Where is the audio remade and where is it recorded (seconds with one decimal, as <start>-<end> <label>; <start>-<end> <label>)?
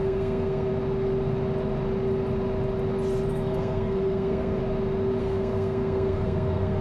0.0-0.7 remade; 0.7-3.3 recorded; 3.3-4.6 remade; 4.6-5.2 recorded; 5.2-6.8 remade